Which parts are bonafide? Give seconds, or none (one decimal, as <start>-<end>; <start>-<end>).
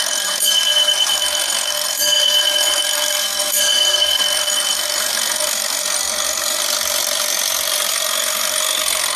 6.6-7.9